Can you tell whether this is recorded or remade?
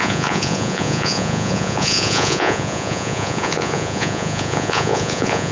remade